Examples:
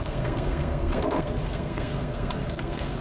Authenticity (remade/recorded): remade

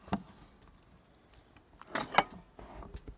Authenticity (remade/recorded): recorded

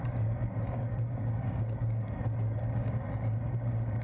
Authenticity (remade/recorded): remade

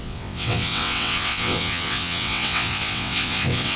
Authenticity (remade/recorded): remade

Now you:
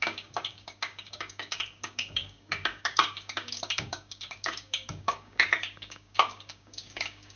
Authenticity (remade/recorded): remade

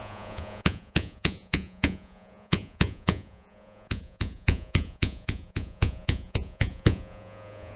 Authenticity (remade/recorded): remade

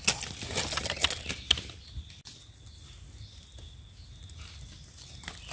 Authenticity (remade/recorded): recorded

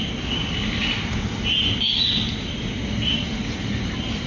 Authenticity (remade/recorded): recorded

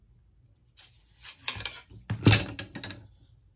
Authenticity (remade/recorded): recorded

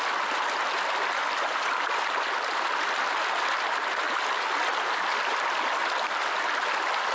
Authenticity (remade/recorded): recorded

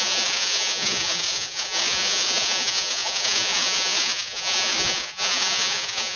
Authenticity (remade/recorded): remade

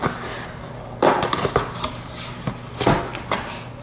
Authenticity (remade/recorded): recorded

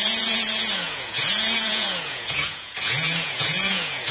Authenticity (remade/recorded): remade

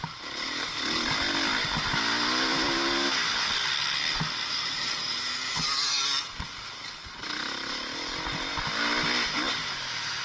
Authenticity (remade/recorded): recorded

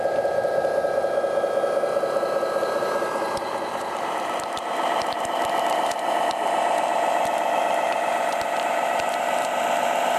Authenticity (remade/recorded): remade